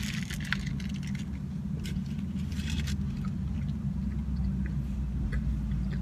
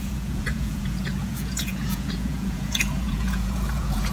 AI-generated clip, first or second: second